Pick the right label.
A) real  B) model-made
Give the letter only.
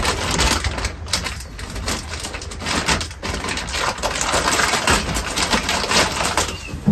A